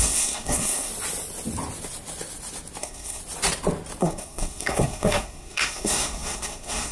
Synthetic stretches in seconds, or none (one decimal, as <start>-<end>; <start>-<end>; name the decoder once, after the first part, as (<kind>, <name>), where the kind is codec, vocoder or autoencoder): 0.0-0.9 (codec, SNAC); 2.8-3.2; 4.0-6.9